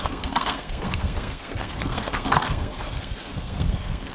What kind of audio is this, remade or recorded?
remade